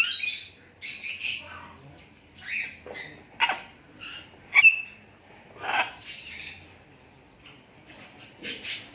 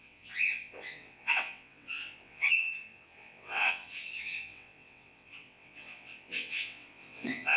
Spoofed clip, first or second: second